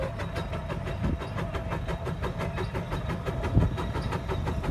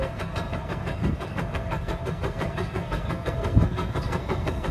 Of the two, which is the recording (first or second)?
first